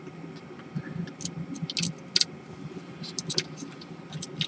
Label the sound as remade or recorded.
recorded